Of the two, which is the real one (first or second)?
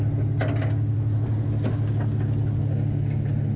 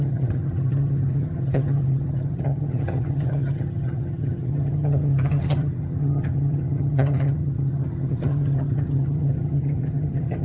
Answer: first